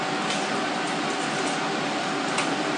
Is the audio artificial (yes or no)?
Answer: no